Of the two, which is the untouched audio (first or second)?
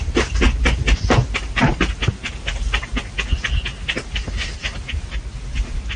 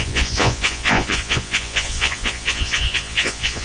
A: first